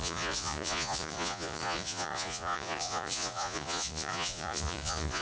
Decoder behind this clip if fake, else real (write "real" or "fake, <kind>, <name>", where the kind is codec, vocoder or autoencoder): fake, vocoder, Vocos